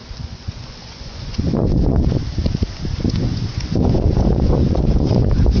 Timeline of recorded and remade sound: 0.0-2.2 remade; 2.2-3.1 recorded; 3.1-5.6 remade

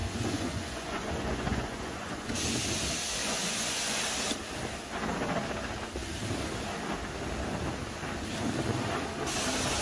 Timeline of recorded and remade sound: 0.0-2.5 remade; 2.5-3.2 recorded; 3.2-4.0 remade; 4.0-9.8 recorded

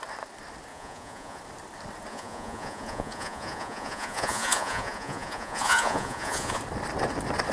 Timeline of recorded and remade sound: 0.0-0.7 recorded; 0.7-1.4 remade; 1.4-2.1 recorded; 2.1-6.6 remade; 6.6-7.5 recorded

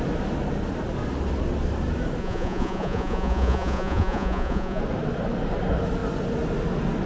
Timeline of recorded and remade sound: 0.0-2.2 recorded; 2.2-4.8 remade; 4.8-7.1 recorded

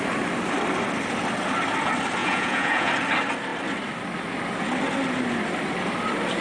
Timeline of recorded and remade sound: 0.0-2.2 recorded; 2.2-2.9 remade; 2.9-6.4 recorded

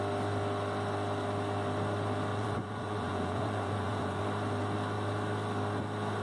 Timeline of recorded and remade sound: 0.0-2.3 recorded; 2.3-4.2 remade; 4.2-6.2 recorded

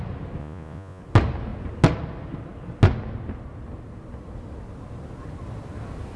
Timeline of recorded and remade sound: 0.0-0.4 recorded; 0.4-1.0 remade; 1.0-6.2 recorded